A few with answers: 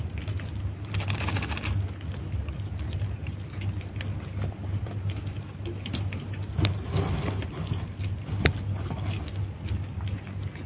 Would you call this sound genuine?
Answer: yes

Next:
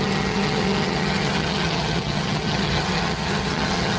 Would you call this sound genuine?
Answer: no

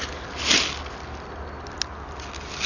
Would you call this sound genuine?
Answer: yes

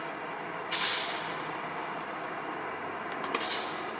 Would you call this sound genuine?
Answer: yes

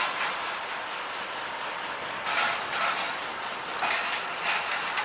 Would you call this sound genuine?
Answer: yes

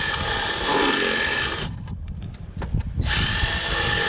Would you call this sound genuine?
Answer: yes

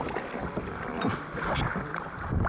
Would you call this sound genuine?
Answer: yes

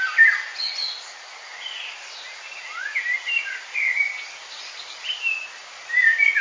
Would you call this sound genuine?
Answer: yes